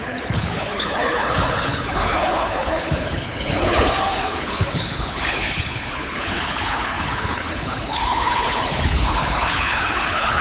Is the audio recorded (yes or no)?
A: no